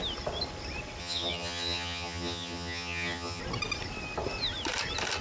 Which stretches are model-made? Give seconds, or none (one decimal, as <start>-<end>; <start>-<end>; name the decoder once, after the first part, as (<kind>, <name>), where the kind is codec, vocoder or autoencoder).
1.0-3.4 (vocoder, HiFi-GAN)